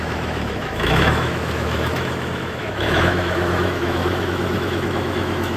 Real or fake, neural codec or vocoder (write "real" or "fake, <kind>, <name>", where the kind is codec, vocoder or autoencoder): fake, autoencoder, DAC-VAE